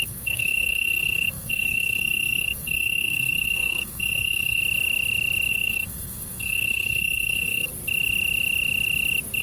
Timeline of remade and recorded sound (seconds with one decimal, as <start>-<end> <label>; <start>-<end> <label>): 0.0-4.6 remade; 4.6-5.5 recorded; 5.5-7.7 remade; 7.7-9.4 recorded